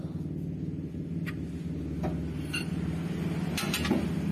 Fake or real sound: real